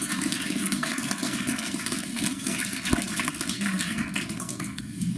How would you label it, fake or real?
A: fake